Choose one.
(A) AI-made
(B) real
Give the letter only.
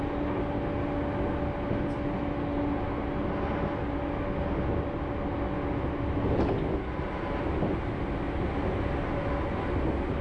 B